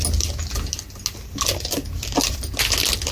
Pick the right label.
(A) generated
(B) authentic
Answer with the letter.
B